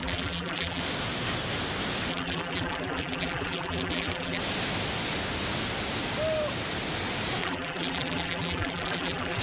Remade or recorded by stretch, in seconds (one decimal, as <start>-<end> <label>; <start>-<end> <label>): 0.0-0.8 remade; 0.8-2.1 recorded; 2.1-4.4 remade; 4.4-7.4 recorded; 7.4-9.4 remade